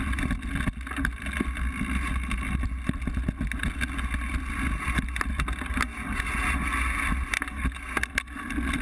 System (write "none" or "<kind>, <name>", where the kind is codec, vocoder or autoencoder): none